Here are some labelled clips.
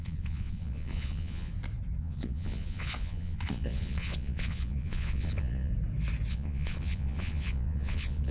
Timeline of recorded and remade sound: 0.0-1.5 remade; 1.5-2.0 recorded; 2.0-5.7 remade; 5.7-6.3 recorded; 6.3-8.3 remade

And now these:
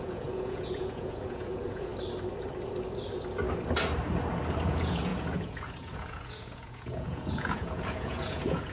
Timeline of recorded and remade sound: 0.0-1.9 remade; 1.9-4.6 recorded; 4.6-8.7 remade